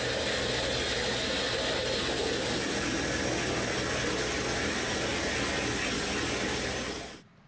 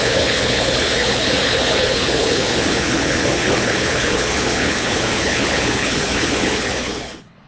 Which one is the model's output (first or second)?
second